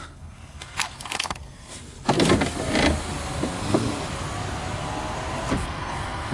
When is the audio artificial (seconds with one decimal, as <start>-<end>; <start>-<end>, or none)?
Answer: 0.0-1.8; 5.6-6.3